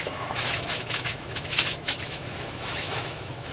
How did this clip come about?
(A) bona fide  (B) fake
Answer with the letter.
B